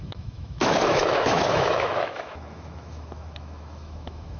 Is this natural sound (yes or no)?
no